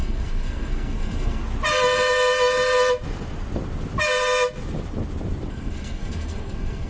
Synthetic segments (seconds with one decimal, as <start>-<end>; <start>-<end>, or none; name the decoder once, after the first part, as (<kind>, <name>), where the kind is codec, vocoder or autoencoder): 0.0-1.4 (codec, SNAC); 5.5-6.9